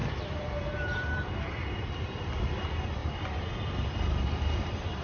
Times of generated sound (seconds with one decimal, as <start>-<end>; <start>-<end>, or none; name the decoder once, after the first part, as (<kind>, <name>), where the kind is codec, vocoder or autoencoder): none